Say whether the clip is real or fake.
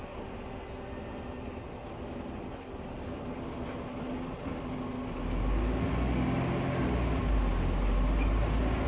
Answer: real